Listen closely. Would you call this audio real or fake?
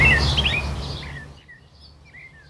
real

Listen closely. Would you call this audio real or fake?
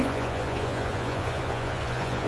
fake